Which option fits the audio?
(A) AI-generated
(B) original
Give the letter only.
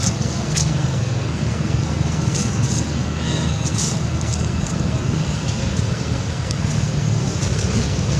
A